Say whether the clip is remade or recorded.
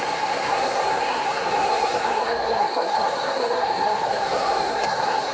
remade